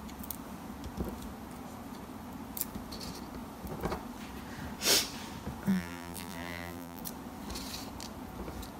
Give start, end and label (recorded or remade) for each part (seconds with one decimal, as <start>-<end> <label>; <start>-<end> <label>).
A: 0.0-5.7 recorded; 5.7-7.0 remade; 7.0-8.8 recorded